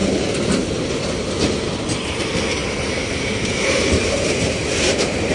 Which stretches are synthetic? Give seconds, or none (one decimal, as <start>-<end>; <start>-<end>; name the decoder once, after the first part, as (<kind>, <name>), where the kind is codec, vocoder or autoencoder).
0.0-5.3 (vocoder, BigVGAN v2)

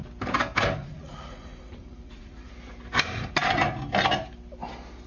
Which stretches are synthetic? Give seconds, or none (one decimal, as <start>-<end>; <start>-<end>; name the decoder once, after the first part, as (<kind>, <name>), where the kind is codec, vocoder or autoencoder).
0.8-2.5 (vocoder, Vocos)

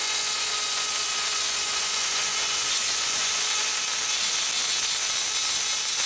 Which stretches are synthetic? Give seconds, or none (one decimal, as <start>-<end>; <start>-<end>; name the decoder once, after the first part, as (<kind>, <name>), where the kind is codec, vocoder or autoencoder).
0.0-3.7 (vocoder, Vocos)

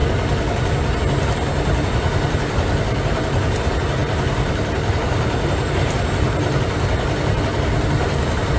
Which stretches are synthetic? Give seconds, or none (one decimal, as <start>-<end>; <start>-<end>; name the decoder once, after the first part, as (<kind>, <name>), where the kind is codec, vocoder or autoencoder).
none

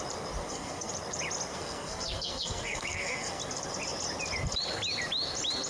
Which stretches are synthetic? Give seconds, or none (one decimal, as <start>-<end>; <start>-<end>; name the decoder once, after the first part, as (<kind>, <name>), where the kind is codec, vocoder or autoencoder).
0.4-0.9 (codec, SNAC); 1.5-3.4